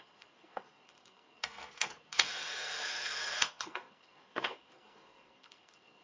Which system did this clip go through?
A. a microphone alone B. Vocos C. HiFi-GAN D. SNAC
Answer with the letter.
D